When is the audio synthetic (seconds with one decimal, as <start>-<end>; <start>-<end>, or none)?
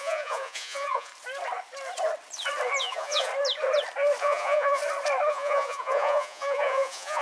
0.0-1.1; 2.8-3.3; 4.2-4.8; 5.3-7.2